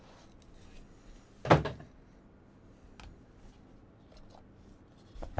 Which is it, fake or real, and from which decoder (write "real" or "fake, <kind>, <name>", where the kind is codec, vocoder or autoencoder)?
real